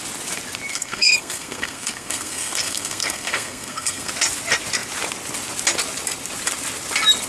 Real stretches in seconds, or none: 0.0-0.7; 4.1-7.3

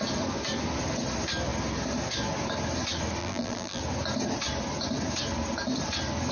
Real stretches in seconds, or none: 0.0-3.2; 3.8-6.3

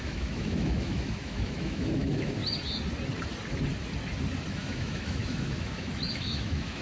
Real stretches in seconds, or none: 2.4-4.5

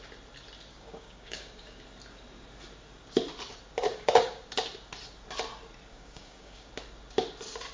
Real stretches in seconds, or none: 0.0-0.7; 1.8-3.9; 4.4-5.9; 6.7-7.7

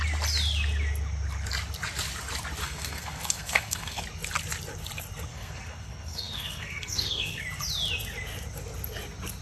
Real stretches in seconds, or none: 0.0-2.6; 4.0-5.3; 7.4-9.4

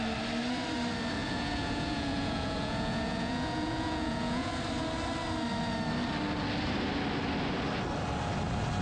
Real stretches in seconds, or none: 0.0-1.2; 4.5-8.8

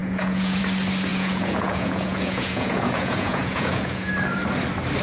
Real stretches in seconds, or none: 0.6-1.1; 4.1-5.0

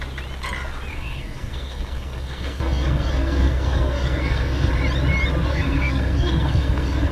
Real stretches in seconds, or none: 0.0-0.9; 4.7-5.5